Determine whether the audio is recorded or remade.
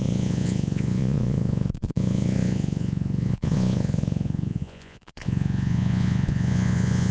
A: remade